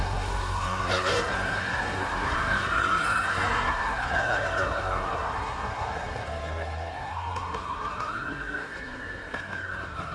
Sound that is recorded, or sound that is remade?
remade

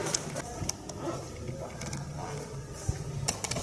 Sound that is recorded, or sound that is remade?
recorded